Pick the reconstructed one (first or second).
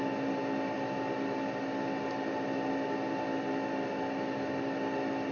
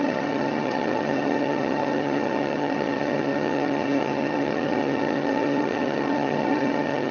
second